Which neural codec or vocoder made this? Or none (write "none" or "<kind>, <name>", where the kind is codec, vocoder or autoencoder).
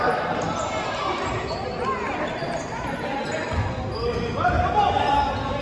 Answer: none